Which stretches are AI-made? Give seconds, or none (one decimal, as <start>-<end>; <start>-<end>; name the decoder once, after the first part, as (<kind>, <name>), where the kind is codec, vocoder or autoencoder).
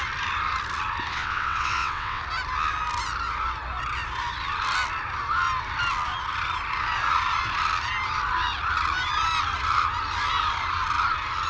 1.1-2.2 (vocoder, WaveNeXt)